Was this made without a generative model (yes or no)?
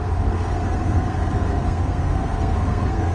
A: no